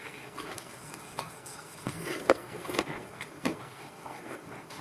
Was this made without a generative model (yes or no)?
no